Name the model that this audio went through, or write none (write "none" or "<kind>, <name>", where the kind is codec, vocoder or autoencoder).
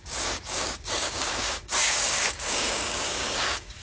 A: codec, DAC